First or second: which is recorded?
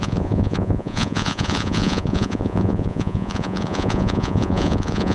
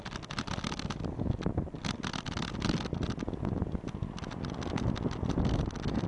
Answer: second